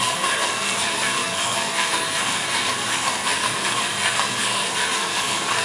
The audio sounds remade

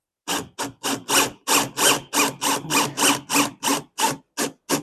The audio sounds recorded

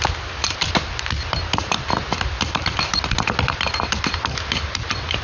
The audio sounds recorded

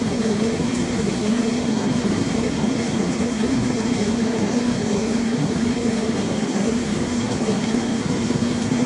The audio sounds remade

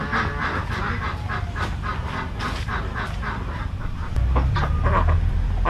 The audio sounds recorded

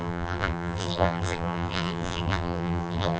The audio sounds remade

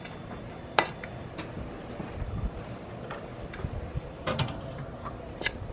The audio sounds recorded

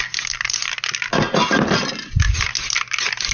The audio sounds recorded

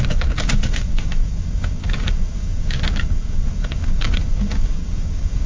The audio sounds remade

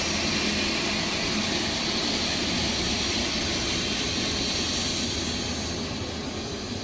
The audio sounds recorded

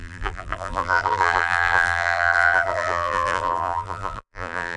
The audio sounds remade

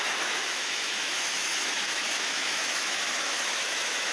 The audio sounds remade